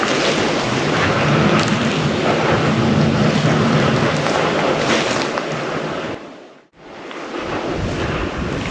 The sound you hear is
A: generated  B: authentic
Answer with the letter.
B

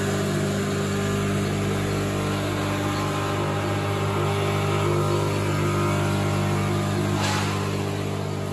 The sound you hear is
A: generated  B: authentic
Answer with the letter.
B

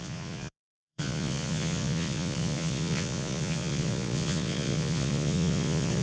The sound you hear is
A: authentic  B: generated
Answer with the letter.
B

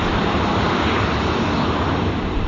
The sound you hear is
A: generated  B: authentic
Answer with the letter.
B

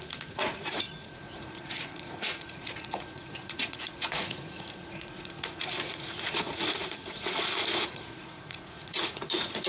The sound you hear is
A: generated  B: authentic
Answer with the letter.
A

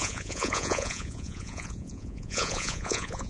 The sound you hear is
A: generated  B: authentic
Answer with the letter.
A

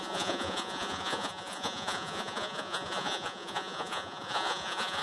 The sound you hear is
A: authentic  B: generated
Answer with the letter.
B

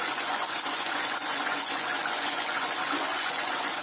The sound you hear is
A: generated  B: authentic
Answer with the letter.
A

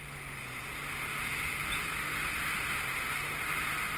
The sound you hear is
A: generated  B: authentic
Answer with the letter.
B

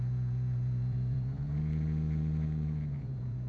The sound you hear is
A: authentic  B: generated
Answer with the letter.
B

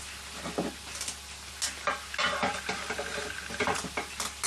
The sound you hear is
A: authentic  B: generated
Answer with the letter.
A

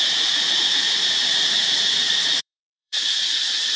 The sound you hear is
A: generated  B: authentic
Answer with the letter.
A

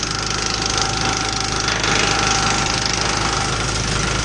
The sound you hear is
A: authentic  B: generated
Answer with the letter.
A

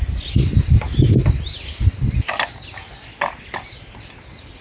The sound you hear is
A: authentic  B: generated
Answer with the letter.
A